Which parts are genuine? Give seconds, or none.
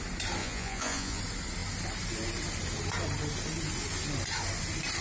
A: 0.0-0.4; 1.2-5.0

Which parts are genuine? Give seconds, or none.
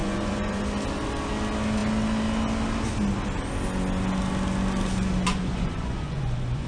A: 0.6-5.3